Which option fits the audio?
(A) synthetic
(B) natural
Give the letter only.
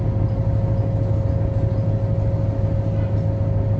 B